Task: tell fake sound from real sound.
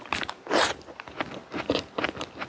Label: real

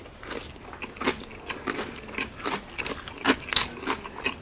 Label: real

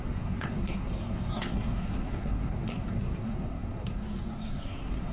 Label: fake